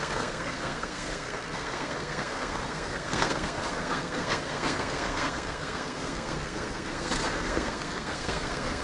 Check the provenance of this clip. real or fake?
fake